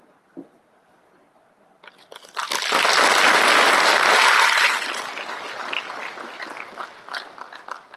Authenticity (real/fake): real